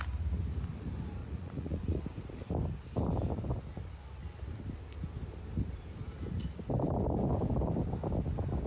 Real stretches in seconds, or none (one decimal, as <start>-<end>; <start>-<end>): 0.0-1.2; 2.0-8.7

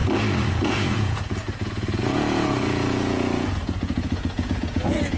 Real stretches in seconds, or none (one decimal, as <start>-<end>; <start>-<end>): 0.0-0.5

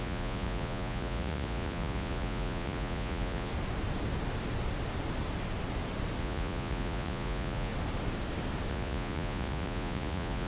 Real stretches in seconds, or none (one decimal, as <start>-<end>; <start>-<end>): 3.5-6.2; 7.7-8.7

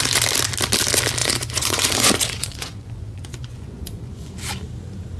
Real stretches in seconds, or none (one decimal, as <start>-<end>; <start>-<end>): 0.0-1.2; 4.3-5.2

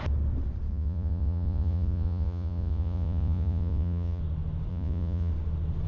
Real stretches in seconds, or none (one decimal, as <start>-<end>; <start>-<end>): 0.0-0.7; 4.2-4.7; 5.3-5.9

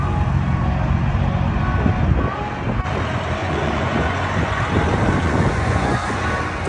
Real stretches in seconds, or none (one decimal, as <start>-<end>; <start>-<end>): 0.0-3.4; 4.6-5.2; 6.2-6.7

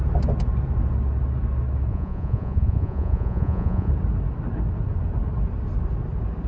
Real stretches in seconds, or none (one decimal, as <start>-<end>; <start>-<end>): 0.0-1.9; 3.9-6.5